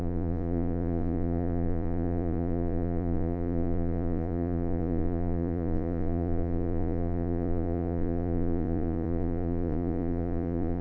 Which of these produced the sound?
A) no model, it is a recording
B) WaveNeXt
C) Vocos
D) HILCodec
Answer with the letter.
C